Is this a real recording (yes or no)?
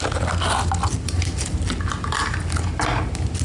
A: yes